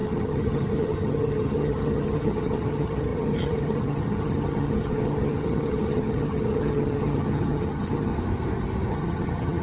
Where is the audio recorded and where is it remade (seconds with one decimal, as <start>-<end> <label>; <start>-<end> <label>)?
0.0-8.1 remade; 8.1-8.9 recorded; 8.9-9.6 remade